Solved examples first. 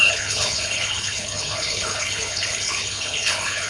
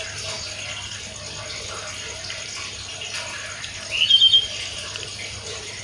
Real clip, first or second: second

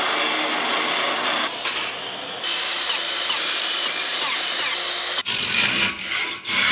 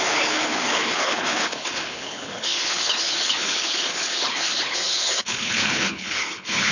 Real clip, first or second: first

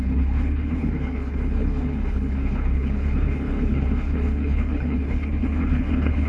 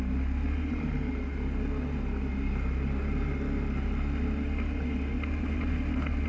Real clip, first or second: second